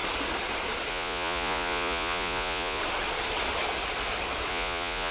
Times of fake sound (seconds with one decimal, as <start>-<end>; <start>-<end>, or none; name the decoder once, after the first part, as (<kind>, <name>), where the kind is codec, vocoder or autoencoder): 0.9-2.8 (vocoder, Vocos); 4.5-5.1